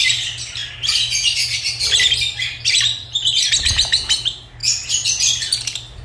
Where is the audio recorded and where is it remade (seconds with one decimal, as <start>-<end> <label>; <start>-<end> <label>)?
0.0-6.0 recorded